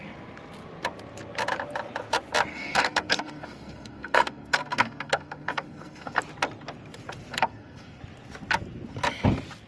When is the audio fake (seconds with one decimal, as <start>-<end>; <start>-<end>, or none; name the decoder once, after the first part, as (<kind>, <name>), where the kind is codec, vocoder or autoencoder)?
2.5-6.2 (codec, SNAC); 7.3-8.0